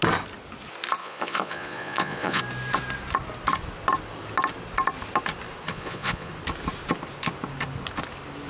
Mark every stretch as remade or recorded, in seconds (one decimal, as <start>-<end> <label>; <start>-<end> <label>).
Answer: 0.0-1.0 recorded; 1.0-2.4 remade; 2.4-5.7 recorded; 5.7-6.3 remade; 6.3-8.5 recorded